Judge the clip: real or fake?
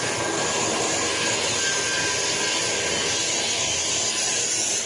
real